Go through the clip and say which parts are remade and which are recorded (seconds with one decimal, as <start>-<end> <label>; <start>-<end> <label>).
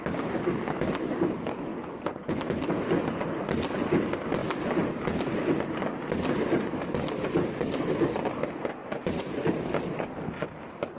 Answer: 0.0-1.7 recorded; 1.7-2.4 remade; 2.4-8.8 recorded; 8.8-9.4 remade; 9.4-11.0 recorded